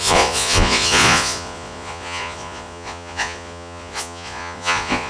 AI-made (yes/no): yes